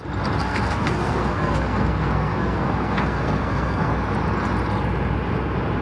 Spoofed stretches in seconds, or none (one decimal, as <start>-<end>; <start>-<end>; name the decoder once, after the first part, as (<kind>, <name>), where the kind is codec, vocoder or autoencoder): 0.4-3.9 (codec, SNAC)